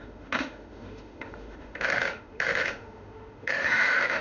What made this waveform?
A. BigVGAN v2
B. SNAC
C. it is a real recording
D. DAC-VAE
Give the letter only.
D